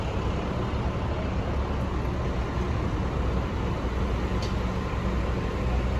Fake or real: real